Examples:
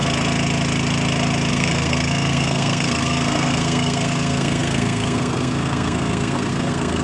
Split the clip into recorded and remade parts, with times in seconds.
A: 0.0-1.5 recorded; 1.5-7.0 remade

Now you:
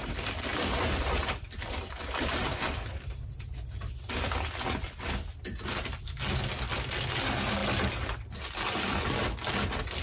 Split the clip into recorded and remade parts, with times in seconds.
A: 0.0-10.0 recorded

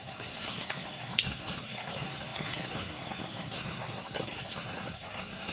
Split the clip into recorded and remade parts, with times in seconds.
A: 0.0-5.5 remade

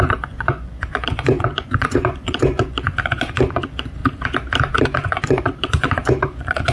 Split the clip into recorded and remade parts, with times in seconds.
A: 0.0-4.0 remade; 4.0-4.8 recorded; 4.8-6.7 remade

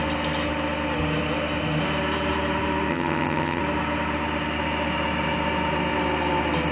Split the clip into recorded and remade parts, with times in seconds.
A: 0.0-2.9 recorded; 2.9-3.6 remade; 3.6-6.7 recorded

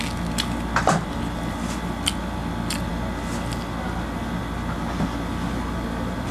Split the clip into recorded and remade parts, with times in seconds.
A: 0.0-6.3 recorded

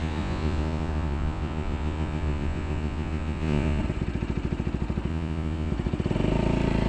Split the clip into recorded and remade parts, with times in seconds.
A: 0.0-3.8 remade; 3.8-5.1 recorded; 5.1-5.7 remade; 5.7-6.9 recorded